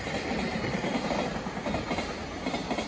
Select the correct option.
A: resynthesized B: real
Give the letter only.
B